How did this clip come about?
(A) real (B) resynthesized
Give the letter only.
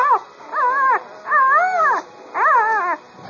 A